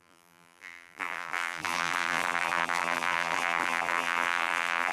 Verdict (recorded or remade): remade